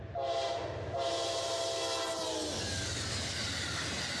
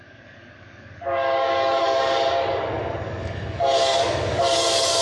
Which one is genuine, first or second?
first